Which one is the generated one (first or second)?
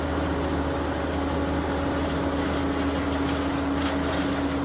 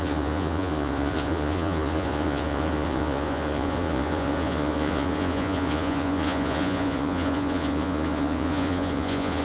second